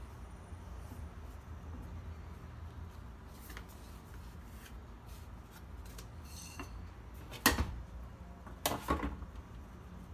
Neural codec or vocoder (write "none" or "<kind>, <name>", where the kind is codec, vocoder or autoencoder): none